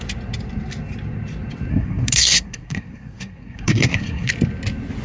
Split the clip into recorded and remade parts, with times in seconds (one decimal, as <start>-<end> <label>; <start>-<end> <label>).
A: 0.0-1.7 recorded; 1.7-4.3 remade; 4.3-5.0 recorded